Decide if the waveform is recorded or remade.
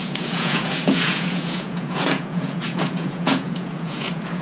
remade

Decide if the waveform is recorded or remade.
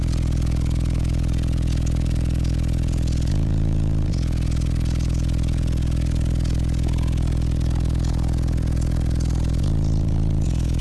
remade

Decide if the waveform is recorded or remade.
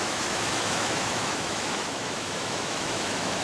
remade